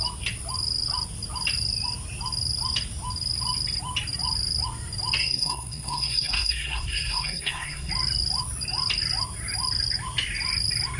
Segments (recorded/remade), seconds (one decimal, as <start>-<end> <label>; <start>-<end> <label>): 0.0-5.2 recorded; 5.2-7.9 remade; 7.9-11.0 recorded

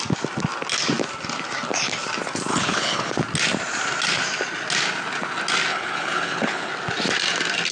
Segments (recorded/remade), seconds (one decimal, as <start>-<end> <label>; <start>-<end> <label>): 0.0-2.5 recorded; 2.5-3.1 remade; 3.1-5.7 recorded; 5.7-6.7 remade; 6.7-7.7 recorded

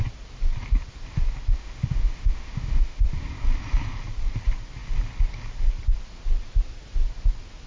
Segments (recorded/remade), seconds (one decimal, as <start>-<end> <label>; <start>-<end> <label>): 0.0-1.5 recorded; 1.5-3.0 remade; 3.0-7.7 recorded

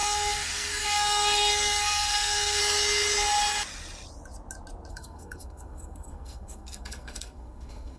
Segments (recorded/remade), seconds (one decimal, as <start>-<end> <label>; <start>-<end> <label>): 0.0-2.6 remade; 2.6-4.9 recorded; 4.9-8.0 remade

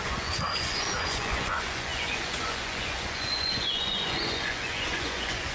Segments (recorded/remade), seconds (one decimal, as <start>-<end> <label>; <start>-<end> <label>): 0.0-5.5 remade

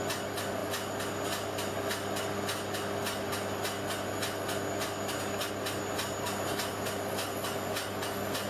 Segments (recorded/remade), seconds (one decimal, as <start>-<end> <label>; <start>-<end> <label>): 0.0-8.5 recorded